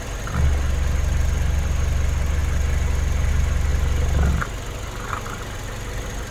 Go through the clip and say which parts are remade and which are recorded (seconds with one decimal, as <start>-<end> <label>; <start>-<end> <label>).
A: 0.0-6.3 recorded